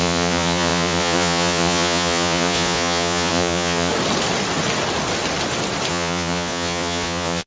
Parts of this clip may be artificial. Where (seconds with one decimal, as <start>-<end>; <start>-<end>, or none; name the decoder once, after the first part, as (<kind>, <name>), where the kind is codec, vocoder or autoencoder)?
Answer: 0.0-3.9 (vocoder, Vocos); 5.9-7.5